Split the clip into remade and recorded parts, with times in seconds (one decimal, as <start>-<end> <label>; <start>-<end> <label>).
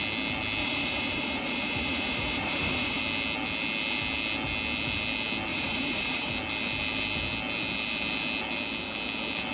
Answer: 0.0-0.6 recorded; 0.6-3.0 remade; 3.0-5.5 recorded; 5.5-6.3 remade; 6.3-9.5 recorded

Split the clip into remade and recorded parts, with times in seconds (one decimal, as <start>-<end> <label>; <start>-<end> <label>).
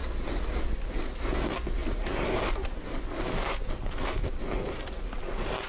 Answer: 0.0-1.8 recorded; 1.8-4.9 remade; 4.9-5.7 recorded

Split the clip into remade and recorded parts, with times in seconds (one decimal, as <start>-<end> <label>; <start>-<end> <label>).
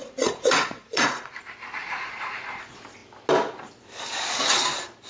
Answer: 0.0-1.3 remade; 1.3-1.8 recorded; 1.8-2.6 remade; 2.6-5.1 recorded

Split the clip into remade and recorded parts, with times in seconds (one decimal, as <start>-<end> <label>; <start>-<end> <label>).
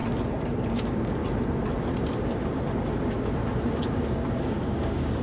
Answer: 0.0-0.7 recorded; 0.7-1.2 remade; 1.2-3.8 recorded; 3.8-5.2 remade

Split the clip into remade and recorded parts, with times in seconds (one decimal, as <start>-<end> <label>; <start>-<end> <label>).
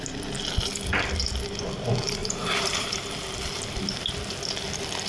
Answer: 0.0-2.2 recorded; 2.2-3.1 remade; 3.1-5.1 recorded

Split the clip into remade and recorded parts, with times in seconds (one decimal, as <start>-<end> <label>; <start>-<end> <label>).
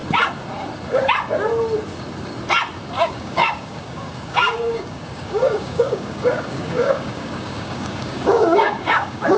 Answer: 0.0-3.0 recorded; 3.0-9.4 remade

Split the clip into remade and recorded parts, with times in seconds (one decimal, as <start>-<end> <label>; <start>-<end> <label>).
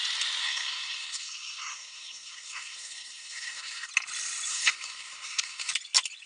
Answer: 0.0-0.4 recorded; 0.4-3.9 remade; 3.9-4.5 recorded; 4.5-5.7 remade; 5.7-6.3 recorded